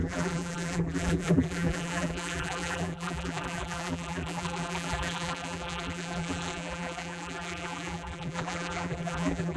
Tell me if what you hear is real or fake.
fake